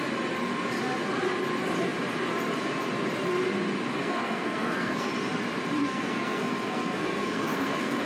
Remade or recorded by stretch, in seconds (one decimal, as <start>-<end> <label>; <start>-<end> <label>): 0.0-4.0 recorded; 4.0-5.1 remade; 5.1-5.8 recorded; 5.8-8.1 remade